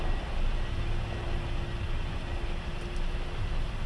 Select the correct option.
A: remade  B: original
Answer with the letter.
B